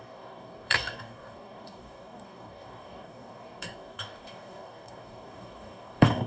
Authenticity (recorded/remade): remade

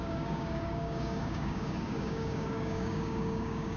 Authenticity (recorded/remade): remade